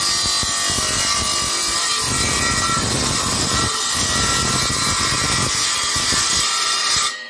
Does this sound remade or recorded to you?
recorded